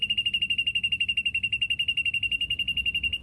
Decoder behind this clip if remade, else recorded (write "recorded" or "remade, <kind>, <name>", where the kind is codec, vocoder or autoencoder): recorded